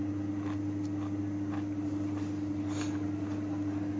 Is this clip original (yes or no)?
yes